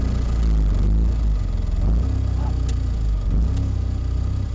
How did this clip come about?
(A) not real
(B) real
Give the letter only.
B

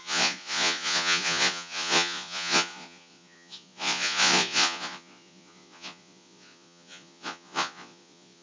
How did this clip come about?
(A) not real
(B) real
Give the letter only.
A